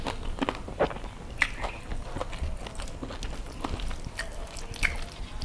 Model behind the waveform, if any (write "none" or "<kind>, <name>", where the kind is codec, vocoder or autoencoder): none